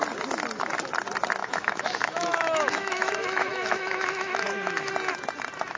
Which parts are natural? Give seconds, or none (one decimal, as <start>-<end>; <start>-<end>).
0.0-1.4; 4.9-5.8